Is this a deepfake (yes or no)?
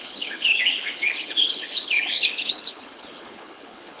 yes